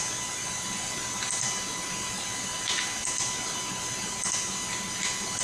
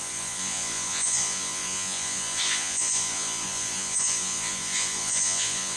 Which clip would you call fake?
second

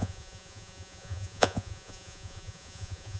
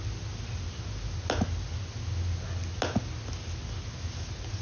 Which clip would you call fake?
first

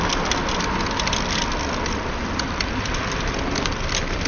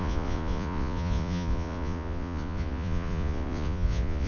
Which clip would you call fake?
second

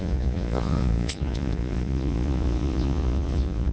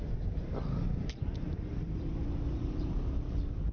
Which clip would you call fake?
first